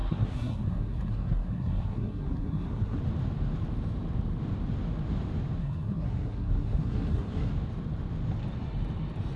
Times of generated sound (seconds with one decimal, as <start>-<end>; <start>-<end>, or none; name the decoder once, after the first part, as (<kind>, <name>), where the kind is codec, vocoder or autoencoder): 0.0-3.0 (codec, SNAC); 5.6-7.5